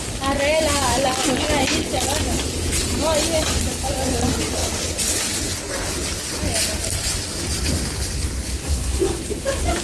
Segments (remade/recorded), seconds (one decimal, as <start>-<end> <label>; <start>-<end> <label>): 0.0-8.6 recorded; 8.6-9.2 remade; 9.2-9.8 recorded